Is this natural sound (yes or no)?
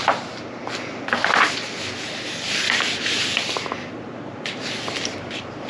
yes